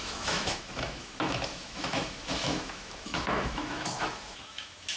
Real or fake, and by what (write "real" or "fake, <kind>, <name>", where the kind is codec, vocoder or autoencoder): fake, autoencoder, DAC-VAE